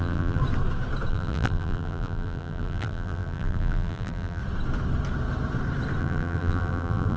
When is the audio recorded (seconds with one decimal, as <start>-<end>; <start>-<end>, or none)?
0.4-1.1; 4.4-6.0